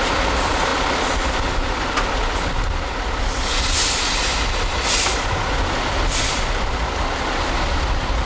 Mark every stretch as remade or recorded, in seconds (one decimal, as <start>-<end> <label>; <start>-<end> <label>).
0.0-8.3 recorded